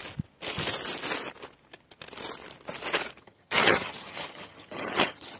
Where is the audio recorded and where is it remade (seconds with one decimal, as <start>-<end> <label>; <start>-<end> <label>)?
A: 0.0-3.2 recorded; 3.2-5.4 remade